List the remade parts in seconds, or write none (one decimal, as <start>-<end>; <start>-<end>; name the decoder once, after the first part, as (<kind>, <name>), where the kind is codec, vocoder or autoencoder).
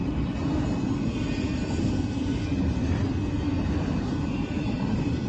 none